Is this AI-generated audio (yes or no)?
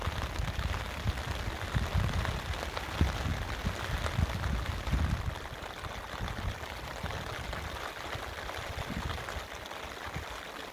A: no